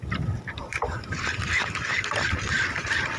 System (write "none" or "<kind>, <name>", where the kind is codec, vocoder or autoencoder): vocoder, BigVGAN v2